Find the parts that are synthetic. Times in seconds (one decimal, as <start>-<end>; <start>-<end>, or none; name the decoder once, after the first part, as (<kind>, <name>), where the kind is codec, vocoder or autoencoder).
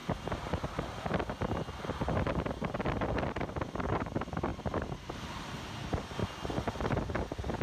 none